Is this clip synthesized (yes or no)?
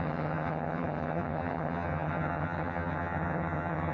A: yes